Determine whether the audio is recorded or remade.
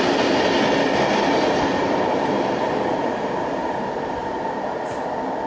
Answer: recorded